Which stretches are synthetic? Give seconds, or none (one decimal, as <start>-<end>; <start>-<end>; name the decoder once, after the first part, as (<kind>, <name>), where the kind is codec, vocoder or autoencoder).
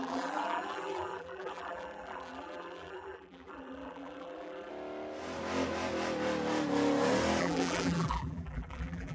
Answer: 0.0-4.7 (vocoder, BigVGAN v2); 7.4-9.1